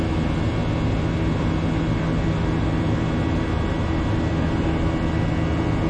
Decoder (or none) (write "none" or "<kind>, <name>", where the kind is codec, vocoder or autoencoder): none